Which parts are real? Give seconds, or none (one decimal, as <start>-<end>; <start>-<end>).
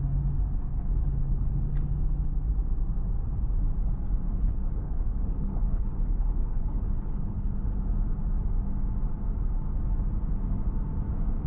0.0-0.7; 1.6-4.3; 7.5-11.5